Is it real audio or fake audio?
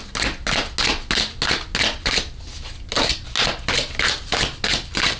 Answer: real